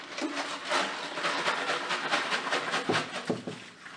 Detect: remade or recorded recorded